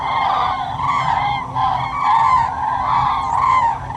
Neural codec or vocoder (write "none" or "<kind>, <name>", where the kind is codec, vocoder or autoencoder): none